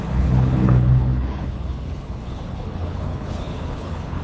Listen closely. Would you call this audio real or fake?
fake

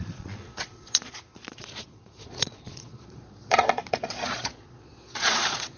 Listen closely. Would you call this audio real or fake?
fake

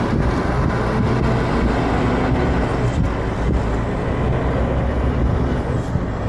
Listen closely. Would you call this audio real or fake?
real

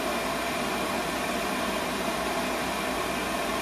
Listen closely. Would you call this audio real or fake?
fake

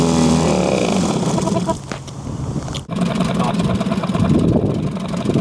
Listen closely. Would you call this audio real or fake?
real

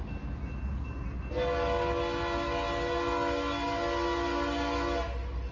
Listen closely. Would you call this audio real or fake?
real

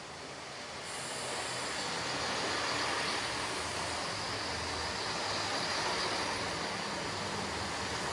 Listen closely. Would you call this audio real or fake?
real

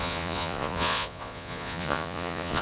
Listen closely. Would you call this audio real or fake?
fake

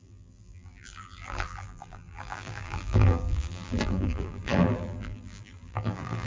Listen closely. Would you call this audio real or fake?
fake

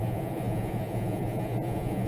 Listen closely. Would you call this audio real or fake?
fake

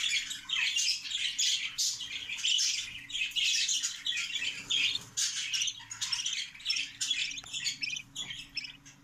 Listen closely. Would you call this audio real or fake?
real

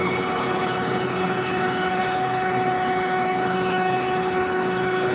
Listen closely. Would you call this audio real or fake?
fake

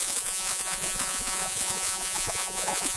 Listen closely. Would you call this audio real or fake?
fake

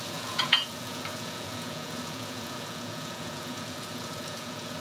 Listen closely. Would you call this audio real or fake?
fake